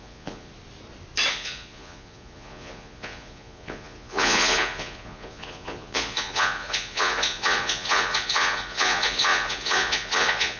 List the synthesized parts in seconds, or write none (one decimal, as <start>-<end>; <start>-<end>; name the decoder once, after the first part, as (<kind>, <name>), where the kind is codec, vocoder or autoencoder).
0.0-0.5 (vocoder, Vocos); 1.3-10.6